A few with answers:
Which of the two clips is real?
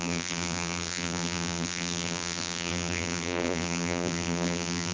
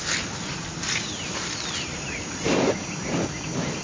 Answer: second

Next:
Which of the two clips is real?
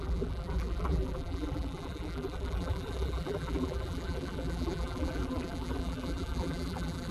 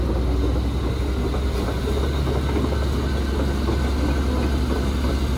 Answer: second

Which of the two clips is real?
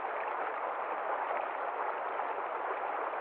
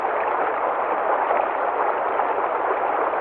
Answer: first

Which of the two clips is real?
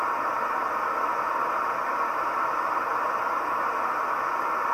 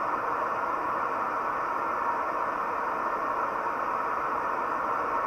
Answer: first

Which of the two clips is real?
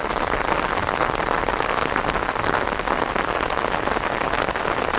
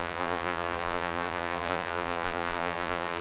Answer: first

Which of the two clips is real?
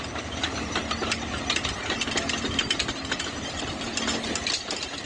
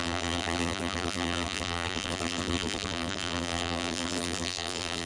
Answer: first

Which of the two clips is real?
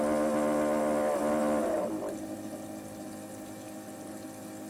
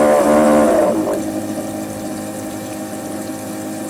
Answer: first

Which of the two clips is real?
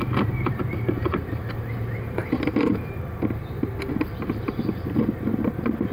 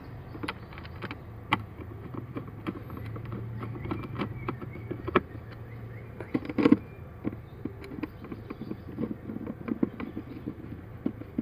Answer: second